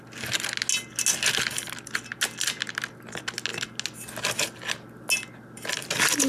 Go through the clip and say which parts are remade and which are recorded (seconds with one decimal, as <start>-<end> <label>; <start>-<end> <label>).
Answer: 0.0-6.3 recorded